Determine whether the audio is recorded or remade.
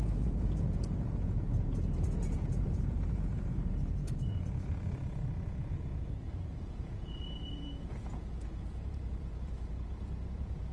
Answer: remade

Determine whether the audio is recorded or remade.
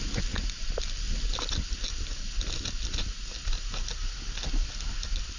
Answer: recorded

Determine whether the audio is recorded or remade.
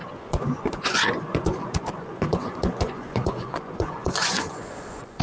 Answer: remade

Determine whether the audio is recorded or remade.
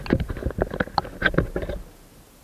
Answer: recorded